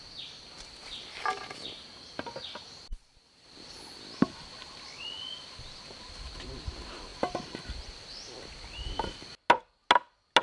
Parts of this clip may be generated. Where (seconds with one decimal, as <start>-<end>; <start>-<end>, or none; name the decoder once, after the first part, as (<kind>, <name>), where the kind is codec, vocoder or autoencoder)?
none